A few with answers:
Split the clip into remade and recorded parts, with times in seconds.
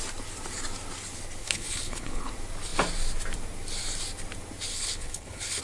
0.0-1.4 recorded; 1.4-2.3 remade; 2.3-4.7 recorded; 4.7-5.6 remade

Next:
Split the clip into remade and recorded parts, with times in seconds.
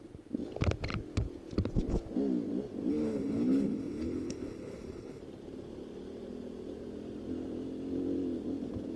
0.0-2.9 recorded; 2.9-5.2 remade; 5.2-9.0 recorded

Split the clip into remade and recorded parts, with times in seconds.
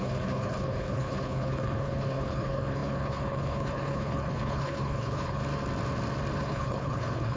0.0-5.4 remade; 5.4-6.4 recorded; 6.4-7.4 remade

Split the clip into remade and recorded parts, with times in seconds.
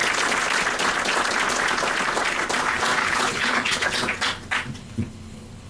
0.0-3.0 recorded; 3.0-3.9 remade; 3.9-4.8 recorded; 4.8-5.7 remade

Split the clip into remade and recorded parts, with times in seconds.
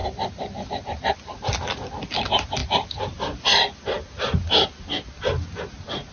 0.0-6.1 recorded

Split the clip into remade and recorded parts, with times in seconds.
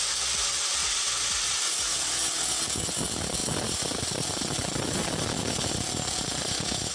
0.0-6.9 recorded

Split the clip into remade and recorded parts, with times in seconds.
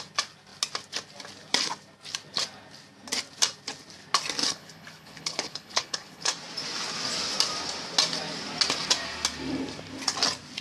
0.0-4.4 recorded; 4.4-6.3 remade; 6.3-10.6 recorded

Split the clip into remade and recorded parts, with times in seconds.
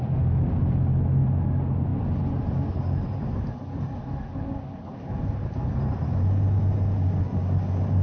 0.0-8.0 recorded